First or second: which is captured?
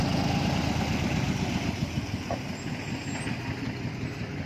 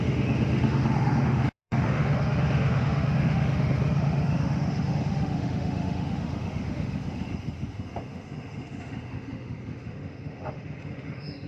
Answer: first